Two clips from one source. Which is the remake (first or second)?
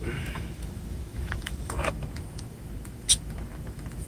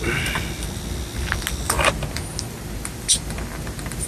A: first